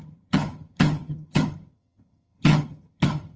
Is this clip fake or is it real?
fake